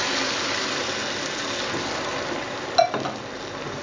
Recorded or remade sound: recorded